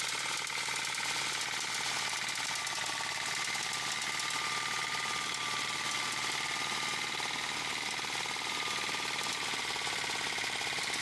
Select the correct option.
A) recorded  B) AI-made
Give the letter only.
A